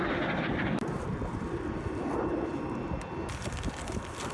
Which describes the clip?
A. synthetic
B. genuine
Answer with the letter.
B